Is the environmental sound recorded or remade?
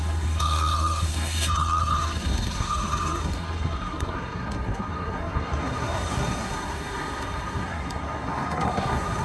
remade